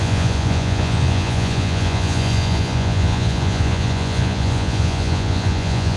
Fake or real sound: fake